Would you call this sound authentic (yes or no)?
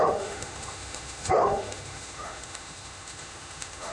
no